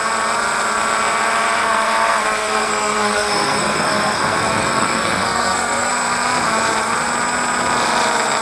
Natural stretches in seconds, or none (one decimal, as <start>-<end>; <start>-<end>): 0.0-1.6; 5.9-8.4